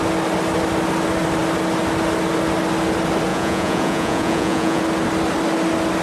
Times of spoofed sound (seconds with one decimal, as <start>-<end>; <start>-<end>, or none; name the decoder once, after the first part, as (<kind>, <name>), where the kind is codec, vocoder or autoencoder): 3.3-4.8 (vocoder, Vocos)